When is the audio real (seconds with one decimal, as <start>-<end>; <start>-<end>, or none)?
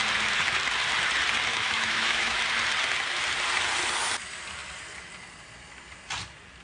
0.0-1.5; 2.4-6.6